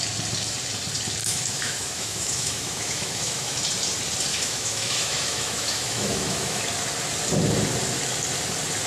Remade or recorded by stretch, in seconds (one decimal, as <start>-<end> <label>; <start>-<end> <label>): 0.0-1.2 recorded; 1.2-3.6 remade; 3.6-4.3 recorded; 4.3-6.6 remade; 6.6-8.9 recorded